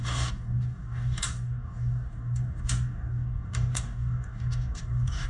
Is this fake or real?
fake